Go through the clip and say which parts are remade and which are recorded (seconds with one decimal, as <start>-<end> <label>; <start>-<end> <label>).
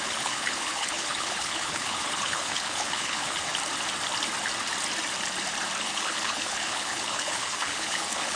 0.0-3.5 remade; 3.5-5.8 recorded; 5.8-8.4 remade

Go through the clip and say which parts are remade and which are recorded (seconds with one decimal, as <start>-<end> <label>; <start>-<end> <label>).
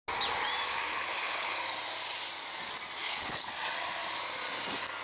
0.0-0.9 recorded; 0.9-1.5 remade; 1.5-3.0 recorded; 3.0-3.5 remade; 3.5-5.0 recorded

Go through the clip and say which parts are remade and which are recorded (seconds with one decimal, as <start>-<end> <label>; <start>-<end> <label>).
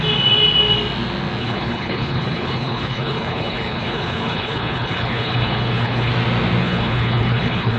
0.0-1.4 recorded; 1.4-6.1 remade; 6.1-6.6 recorded; 6.6-7.8 remade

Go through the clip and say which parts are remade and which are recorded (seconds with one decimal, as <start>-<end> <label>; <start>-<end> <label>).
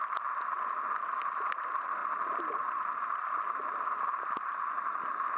0.0-5.4 recorded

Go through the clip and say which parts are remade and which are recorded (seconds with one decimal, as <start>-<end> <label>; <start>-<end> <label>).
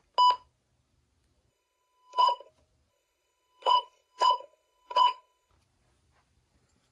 0.0-1.5 recorded; 1.5-2.5 remade; 2.5-2.9 recorded; 2.9-5.5 remade; 5.5-6.9 recorded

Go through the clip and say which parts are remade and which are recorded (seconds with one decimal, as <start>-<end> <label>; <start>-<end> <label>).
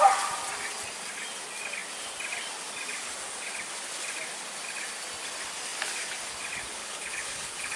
0.0-6.8 recorded; 6.8-7.8 remade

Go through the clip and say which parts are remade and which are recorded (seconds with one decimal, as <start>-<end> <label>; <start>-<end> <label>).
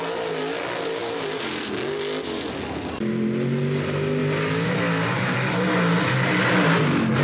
0.0-7.2 recorded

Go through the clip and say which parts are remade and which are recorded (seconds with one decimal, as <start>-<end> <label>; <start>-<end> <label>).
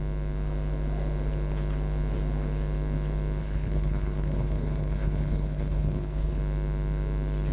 0.0-3.4 recorded; 3.4-6.4 remade; 6.4-7.5 recorded